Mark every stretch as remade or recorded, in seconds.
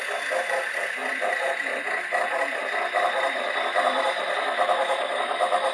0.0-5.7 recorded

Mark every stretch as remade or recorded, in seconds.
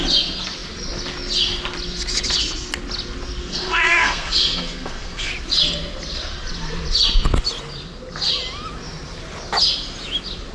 0.0-3.4 recorded; 3.4-5.3 remade; 5.3-10.5 recorded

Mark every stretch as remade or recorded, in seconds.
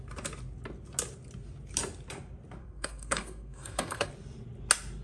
0.0-2.6 recorded; 2.6-4.1 remade; 4.1-5.0 recorded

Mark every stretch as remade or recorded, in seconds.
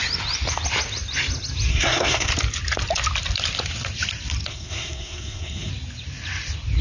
0.0-1.7 recorded; 1.7-2.3 remade; 2.3-4.5 recorded; 4.5-5.7 remade; 5.7-6.8 recorded